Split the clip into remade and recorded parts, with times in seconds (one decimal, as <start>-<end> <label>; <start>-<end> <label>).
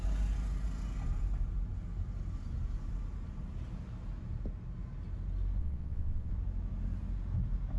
0.0-5.6 recorded; 5.6-6.3 remade; 6.3-7.8 recorded